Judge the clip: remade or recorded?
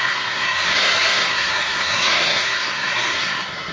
remade